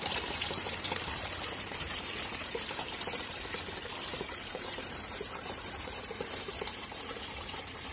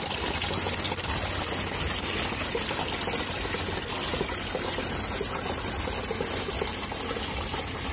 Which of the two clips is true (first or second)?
second